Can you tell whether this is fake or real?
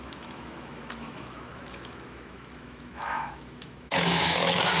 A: fake